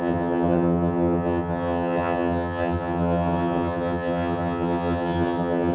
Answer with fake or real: fake